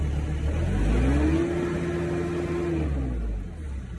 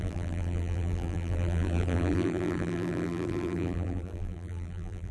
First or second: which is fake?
second